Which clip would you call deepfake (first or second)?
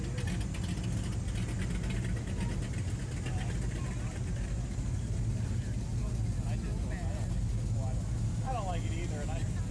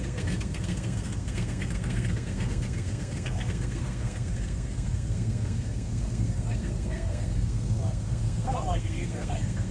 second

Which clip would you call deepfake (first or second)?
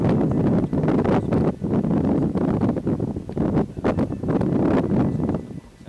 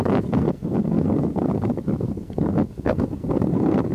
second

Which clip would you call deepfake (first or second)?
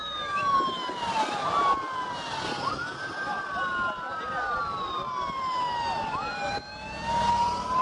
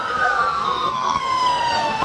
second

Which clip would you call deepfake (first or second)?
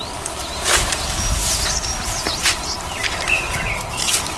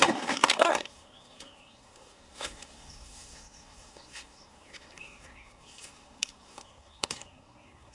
second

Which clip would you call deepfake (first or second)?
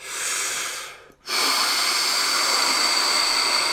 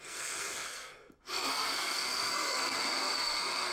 second